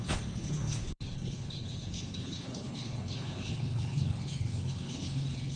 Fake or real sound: fake